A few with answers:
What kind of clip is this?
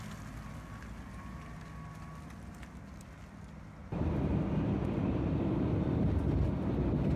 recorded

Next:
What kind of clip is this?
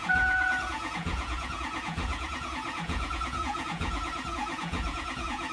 remade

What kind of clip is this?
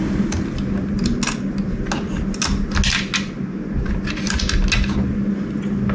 recorded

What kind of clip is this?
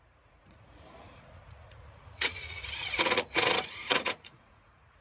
remade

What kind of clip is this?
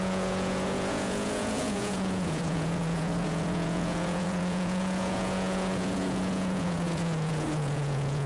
remade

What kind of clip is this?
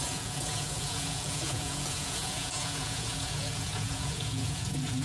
remade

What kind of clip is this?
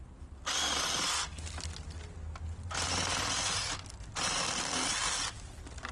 recorded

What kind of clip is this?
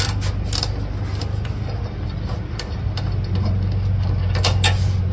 recorded